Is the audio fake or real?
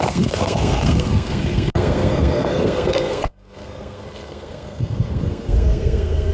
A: fake